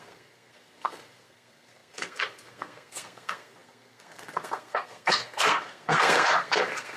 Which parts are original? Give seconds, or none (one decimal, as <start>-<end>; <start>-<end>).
none